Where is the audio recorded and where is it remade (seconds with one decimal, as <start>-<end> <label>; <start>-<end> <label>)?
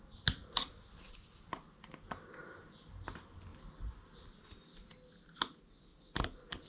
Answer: 0.0-6.7 recorded